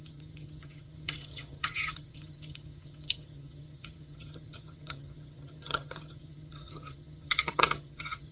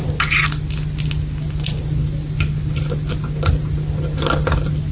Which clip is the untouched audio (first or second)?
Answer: second